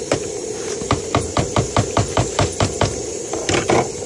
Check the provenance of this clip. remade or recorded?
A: remade